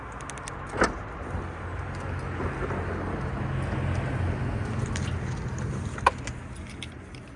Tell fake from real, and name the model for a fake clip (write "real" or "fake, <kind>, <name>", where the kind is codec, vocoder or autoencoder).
real